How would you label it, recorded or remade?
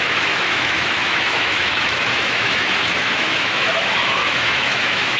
remade